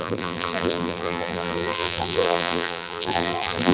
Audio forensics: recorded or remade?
remade